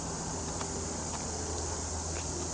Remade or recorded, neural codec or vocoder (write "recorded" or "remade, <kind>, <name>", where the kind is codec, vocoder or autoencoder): recorded